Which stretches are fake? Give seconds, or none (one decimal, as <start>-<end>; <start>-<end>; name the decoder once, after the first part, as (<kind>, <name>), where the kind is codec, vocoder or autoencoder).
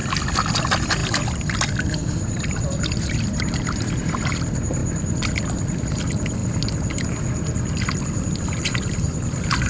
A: 0.6-6.4 (vocoder, BigVGAN v2); 8.3-9.7